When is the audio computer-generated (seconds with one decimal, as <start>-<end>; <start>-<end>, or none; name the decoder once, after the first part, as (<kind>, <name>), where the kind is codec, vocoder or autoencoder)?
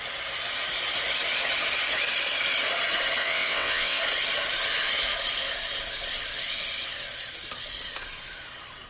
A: 3.2-4.0 (vocoder, WaveNeXt)